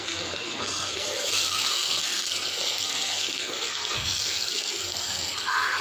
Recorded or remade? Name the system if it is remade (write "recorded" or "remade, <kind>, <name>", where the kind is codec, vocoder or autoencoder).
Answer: remade, codec, SNAC